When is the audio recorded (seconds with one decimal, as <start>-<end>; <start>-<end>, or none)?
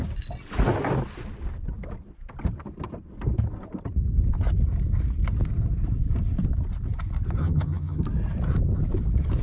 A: 0.0-7.4; 8.0-9.4